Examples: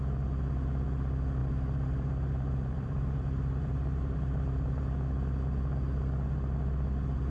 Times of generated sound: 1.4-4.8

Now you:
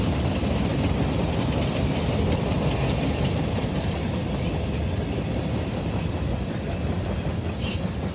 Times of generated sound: none